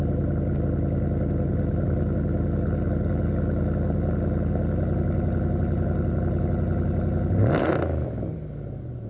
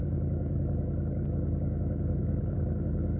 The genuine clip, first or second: first